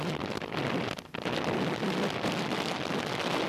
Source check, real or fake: real